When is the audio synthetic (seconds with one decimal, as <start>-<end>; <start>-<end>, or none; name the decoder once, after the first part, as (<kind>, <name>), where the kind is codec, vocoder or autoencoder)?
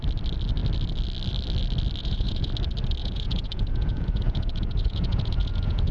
2.0-2.5 (vocoder, Vocos); 3.0-5.9